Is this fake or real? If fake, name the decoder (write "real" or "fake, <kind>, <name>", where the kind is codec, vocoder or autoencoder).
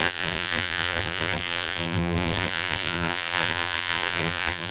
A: fake, vocoder, BigVGAN v2